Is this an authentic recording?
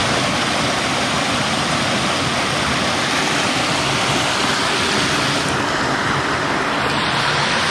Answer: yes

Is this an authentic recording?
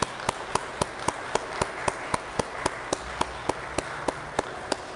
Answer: yes